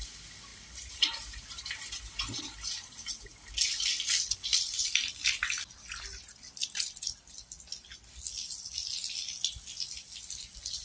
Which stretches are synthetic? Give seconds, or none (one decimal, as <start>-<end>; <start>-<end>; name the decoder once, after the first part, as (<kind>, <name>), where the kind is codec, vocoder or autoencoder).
none